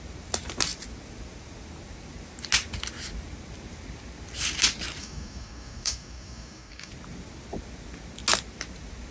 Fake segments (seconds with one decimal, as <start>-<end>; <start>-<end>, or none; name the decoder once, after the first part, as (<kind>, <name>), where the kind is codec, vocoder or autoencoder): 5.0-6.9 (codec, DAC)